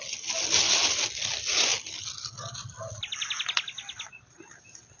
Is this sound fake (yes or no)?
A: no